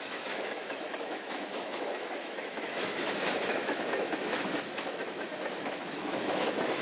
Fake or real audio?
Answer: fake